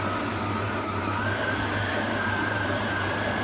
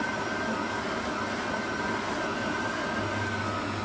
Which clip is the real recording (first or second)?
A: second